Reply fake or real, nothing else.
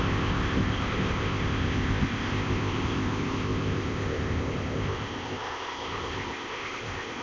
fake